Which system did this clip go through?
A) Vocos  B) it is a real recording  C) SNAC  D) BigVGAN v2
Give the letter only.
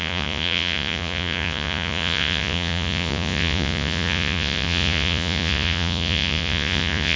A